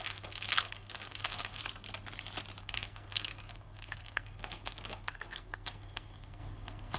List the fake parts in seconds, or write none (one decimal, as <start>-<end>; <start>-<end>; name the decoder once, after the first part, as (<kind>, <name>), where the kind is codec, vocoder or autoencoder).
0.0-1.6 (codec, SNAC); 2.6-7.0